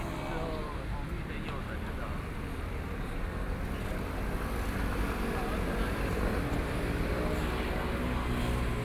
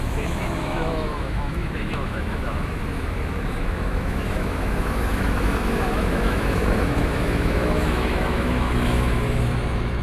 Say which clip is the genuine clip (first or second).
first